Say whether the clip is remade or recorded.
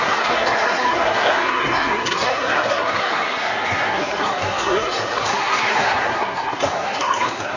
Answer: remade